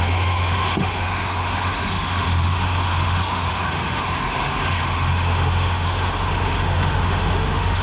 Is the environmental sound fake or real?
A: fake